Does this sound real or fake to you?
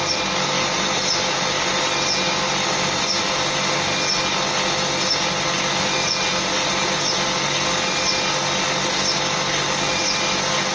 real